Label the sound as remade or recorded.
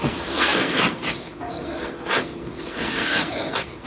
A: remade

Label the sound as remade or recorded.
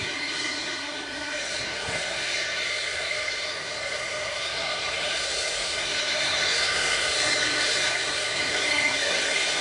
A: remade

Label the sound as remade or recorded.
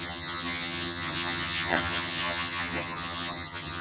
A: remade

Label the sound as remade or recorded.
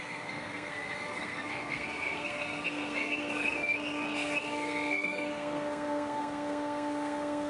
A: remade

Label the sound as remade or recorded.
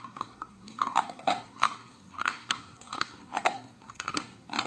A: remade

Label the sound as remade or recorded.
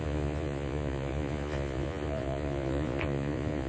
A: remade